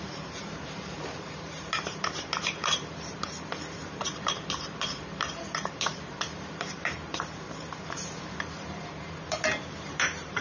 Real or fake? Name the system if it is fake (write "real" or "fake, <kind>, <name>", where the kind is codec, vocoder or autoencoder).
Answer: fake, vocoder, BigVGAN v2